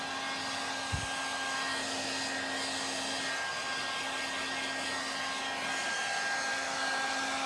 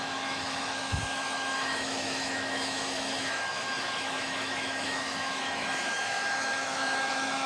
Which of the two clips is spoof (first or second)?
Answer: second